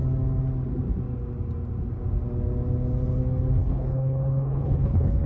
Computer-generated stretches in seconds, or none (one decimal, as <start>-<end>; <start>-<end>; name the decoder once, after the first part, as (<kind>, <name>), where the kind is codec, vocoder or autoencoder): 3.6-5.3 (codec, HILCodec)